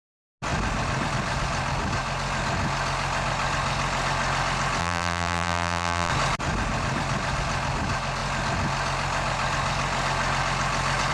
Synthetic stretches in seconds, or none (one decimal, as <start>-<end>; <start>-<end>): 4.8-6.1